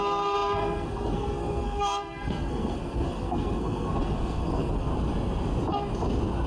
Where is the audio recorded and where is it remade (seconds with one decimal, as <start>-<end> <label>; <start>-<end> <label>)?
0.0-4.9 remade; 4.9-6.5 recorded